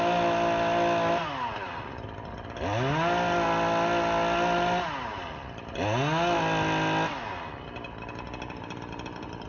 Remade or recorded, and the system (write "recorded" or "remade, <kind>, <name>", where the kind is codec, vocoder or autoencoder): recorded